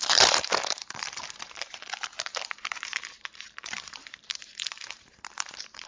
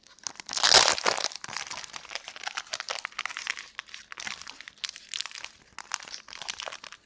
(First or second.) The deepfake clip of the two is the first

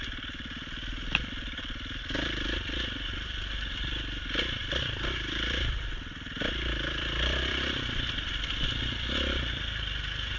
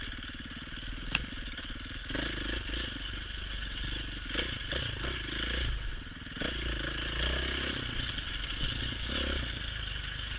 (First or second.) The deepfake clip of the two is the first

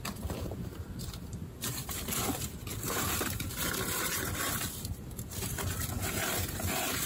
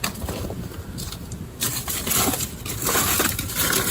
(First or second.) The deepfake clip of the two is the first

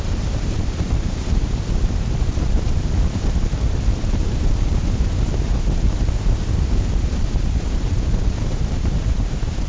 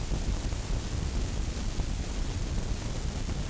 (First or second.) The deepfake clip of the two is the first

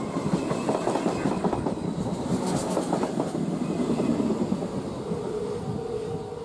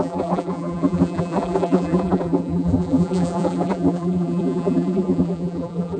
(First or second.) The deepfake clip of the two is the second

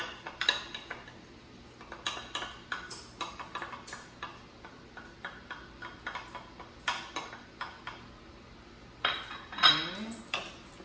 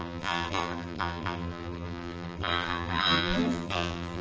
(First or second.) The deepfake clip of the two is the second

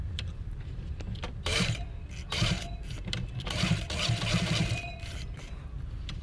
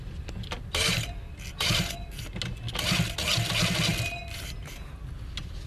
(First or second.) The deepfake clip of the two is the first